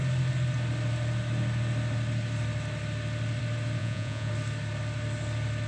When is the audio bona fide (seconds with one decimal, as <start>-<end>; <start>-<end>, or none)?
0.0-3.8; 4.3-5.7